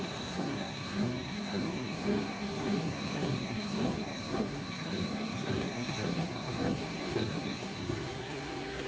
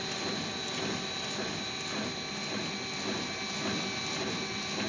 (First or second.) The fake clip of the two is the first